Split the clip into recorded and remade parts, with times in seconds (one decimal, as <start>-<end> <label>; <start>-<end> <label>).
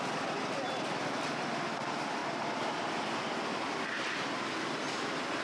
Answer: 0.0-5.4 recorded